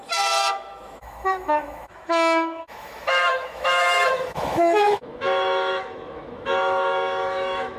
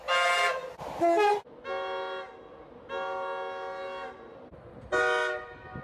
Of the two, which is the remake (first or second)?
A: first